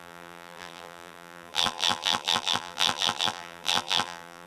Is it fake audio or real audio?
fake